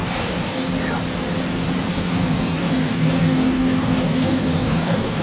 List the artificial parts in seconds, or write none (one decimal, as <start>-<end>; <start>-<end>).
0.0-0.7; 1.9-5.2

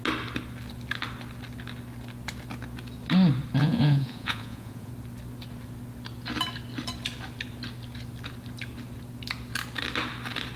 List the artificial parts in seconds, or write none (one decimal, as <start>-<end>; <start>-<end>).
3.6-4.9

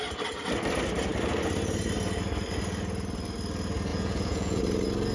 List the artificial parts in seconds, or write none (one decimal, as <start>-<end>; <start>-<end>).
3.9-4.6

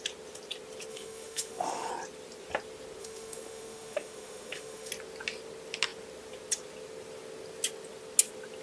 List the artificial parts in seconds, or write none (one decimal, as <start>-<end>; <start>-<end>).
0.9-1.9; 3.0-4.9

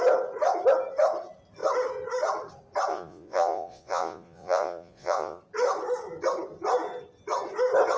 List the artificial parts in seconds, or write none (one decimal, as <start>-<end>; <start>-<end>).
2.9-5.4

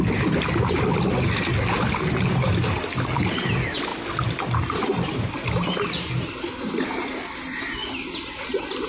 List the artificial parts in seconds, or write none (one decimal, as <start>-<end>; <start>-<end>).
none

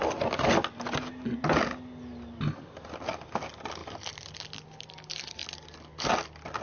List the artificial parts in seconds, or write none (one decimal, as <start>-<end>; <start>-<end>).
none